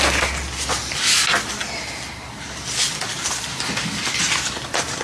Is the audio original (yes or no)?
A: yes